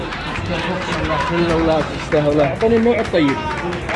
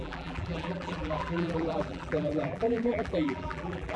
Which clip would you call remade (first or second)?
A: second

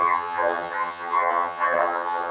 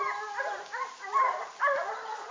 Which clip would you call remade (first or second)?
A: first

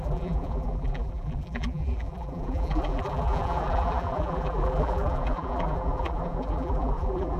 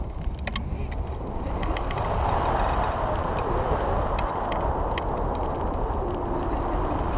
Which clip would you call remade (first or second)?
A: first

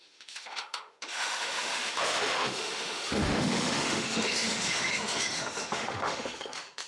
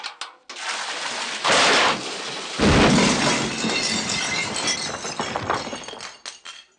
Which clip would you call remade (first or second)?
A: first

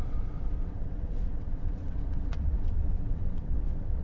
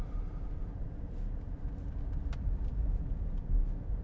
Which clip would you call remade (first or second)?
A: first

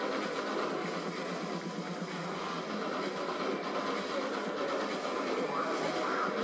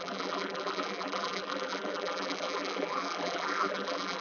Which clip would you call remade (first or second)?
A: second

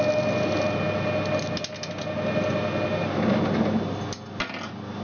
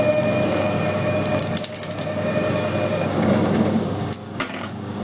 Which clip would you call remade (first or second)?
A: second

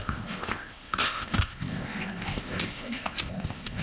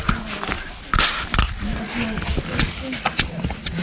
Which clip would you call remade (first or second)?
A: first